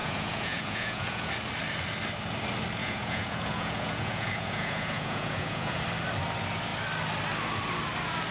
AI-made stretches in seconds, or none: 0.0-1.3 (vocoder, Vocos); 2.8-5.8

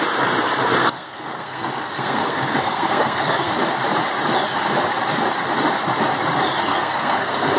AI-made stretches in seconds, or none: 0.8-3.5 (codec, SNAC); 6.7-7.6

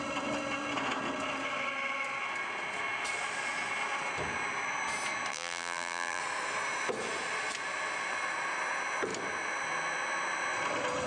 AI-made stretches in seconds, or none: 5.3-6.2 (vocoder, BigVGAN v2)

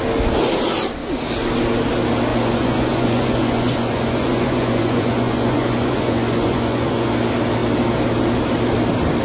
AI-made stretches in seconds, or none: 2.3-7.1 (vocoder, Vocos)

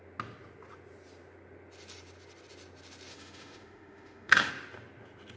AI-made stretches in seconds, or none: 3.1-4.5 (autoencoder, DAC-VAE)

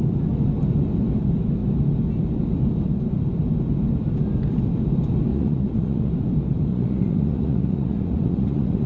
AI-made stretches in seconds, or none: 5.3-6.1 (vocoder, Vocos); 6.7-8.9